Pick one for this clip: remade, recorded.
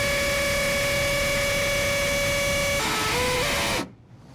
recorded